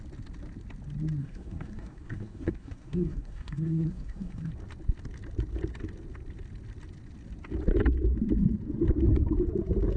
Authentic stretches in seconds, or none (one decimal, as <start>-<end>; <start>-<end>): 0.0-1.2; 4.5-10.0